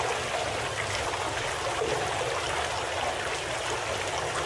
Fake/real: real